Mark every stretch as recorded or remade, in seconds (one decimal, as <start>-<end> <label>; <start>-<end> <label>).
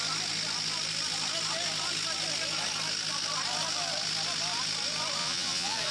0.0-5.2 recorded; 5.2-5.9 remade